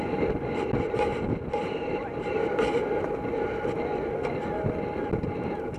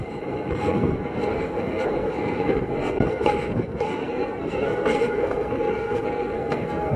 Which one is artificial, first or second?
second